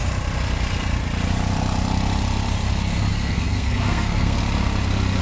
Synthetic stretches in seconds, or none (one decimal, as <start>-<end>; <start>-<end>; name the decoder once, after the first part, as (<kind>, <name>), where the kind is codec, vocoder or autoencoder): 3.1-4.4 (codec, SNAC)

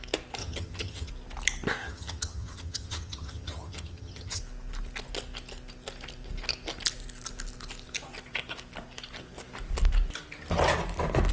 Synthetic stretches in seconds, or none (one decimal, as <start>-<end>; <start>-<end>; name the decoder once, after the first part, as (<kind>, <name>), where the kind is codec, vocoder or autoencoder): 0.4-1.1 (vocoder, HiFi-GAN); 1.8-4.4

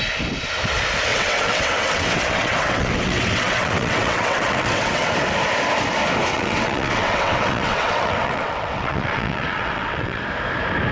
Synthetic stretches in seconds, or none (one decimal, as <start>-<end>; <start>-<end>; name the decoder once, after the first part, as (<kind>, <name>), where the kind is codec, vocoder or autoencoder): 1.1-5.1 (vocoder, WaveNeXt); 6.3-10.2

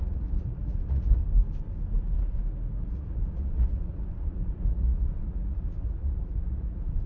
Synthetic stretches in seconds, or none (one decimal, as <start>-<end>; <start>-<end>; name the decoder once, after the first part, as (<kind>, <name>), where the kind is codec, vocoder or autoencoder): 0.0-1.2 (vocoder, Vocos); 2.8-7.1

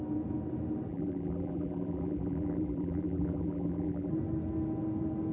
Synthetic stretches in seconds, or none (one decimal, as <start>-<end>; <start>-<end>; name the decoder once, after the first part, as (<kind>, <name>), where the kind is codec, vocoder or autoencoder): 0.9-4.1 (vocoder, BigVGAN v2)

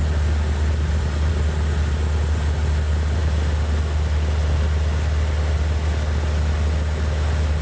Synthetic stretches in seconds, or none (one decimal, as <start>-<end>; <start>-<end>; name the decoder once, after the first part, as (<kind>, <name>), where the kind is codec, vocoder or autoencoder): none